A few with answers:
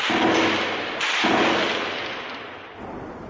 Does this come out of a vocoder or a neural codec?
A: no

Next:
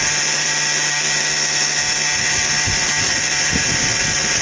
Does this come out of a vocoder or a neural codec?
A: no